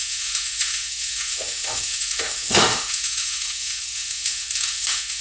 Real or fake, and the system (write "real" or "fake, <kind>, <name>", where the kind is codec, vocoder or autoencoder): fake, autoencoder, DAC-VAE